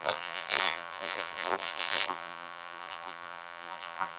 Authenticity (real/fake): fake